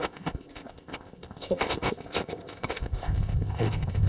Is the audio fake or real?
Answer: fake